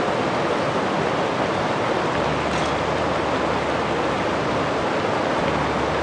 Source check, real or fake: real